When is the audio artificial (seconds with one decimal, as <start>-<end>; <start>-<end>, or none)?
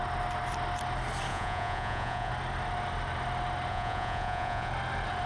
1.3-2.3; 3.7-4.7